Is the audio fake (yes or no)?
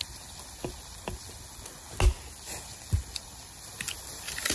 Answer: no